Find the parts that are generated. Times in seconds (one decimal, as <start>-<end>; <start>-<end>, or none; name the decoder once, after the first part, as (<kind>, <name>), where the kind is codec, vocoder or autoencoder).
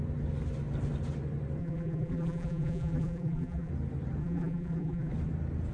1.6-3.7 (vocoder, BigVGAN v2); 4.2-5.1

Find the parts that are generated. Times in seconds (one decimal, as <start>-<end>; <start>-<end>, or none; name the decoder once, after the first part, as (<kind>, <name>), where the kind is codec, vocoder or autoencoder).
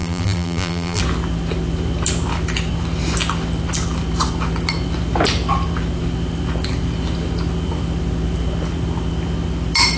0.0-1.0 (vocoder, BigVGAN v2)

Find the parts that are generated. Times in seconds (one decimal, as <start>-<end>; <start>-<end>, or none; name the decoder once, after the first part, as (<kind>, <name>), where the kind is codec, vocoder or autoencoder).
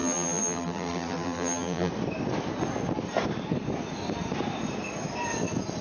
0.0-1.9 (vocoder, BigVGAN v2)